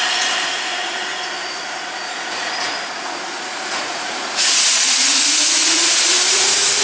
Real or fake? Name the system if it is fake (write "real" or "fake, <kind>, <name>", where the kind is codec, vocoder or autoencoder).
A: fake, vocoder, Vocos